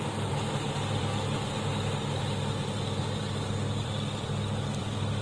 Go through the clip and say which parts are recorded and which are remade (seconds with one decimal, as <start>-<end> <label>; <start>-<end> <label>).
0.0-1.1 remade; 1.1-3.0 recorded; 3.0-5.2 remade